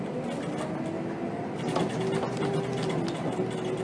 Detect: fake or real real